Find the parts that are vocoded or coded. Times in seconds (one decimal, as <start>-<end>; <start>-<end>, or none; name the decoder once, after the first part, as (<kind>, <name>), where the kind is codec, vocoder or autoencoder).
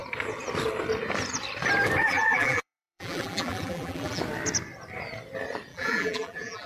2.0-4.2 (vocoder, BigVGAN v2); 5.7-6.7